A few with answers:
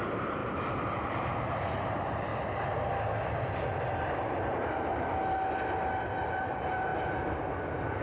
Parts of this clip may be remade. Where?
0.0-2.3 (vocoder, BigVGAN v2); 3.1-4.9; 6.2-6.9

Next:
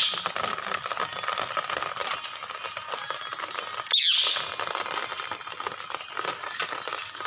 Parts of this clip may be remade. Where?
none